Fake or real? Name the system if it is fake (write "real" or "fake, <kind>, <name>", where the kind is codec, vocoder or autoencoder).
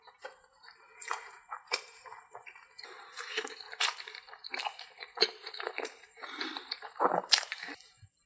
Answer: fake, vocoder, BigVGAN v2